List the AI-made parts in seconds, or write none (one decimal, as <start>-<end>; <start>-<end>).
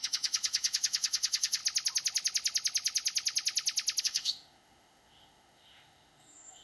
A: 0.0-1.6; 4.0-6.6